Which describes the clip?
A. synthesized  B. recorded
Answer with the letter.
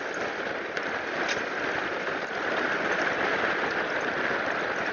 B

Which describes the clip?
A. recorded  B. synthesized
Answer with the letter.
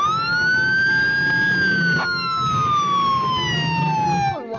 A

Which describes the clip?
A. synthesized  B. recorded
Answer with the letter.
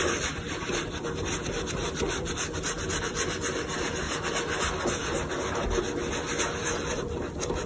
A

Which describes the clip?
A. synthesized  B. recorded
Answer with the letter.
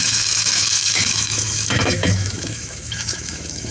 A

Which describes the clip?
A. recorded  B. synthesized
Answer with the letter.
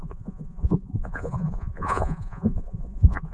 B